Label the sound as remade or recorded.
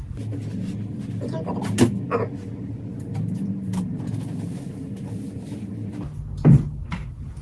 recorded